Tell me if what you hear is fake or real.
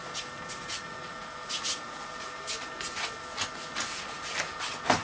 real